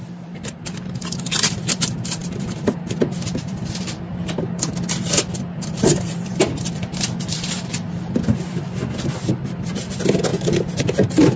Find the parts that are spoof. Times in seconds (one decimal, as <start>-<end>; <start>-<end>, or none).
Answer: 0.0-10.3; 10.8-11.4